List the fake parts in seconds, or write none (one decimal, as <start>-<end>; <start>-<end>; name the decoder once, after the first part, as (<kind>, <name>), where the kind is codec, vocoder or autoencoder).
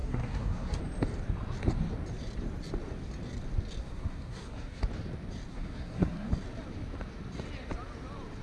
0.0-0.8 (codec, SNAC); 3.8-4.8; 5.5-6.3